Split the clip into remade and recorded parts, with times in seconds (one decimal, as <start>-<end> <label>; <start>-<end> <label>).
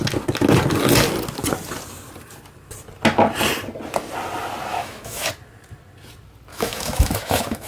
0.0-4.7 recorded; 4.7-5.3 remade; 5.3-6.5 recorded; 6.5-7.7 remade